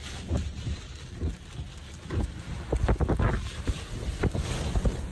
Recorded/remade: recorded